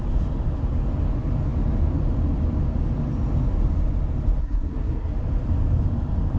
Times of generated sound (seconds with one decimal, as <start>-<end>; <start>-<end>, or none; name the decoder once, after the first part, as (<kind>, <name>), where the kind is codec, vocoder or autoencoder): 4.4-5.1 (codec, SNAC)